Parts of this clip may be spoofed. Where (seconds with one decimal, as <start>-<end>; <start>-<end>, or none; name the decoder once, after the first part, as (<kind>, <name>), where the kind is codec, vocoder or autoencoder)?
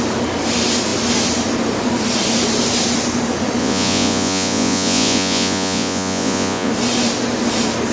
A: 3.6-6.7 (vocoder, Vocos)